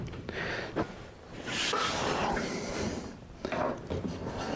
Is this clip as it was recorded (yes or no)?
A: yes